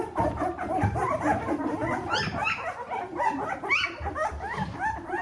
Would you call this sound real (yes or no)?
no